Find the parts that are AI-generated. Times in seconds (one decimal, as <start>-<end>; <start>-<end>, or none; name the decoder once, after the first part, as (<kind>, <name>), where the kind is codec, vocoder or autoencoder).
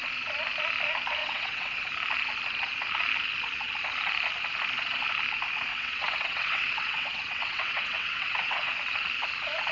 1.2-1.9 (vocoder, WaveNeXt); 5.7-8.7